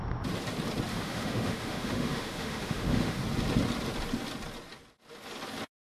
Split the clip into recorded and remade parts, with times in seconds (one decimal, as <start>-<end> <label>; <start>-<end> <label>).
0.0-0.9 recorded; 0.9-3.2 remade; 3.2-5.8 recorded